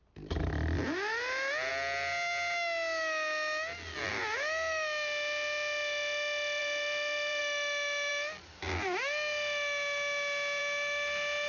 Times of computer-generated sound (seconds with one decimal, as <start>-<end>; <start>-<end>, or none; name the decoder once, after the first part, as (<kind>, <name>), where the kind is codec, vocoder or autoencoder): 6.6-7.4 (vocoder, BigVGAN v2)